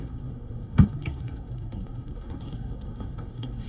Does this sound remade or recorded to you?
remade